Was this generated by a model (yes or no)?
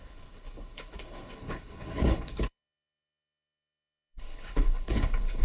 yes